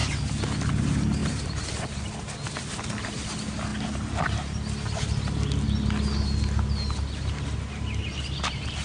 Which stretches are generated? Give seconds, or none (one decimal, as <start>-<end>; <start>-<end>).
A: 1.2-2.1